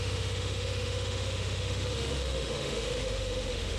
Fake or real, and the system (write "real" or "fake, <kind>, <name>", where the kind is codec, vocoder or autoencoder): fake, autoencoder, DAC-VAE